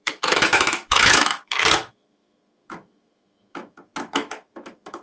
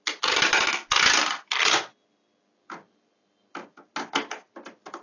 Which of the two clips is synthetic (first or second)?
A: first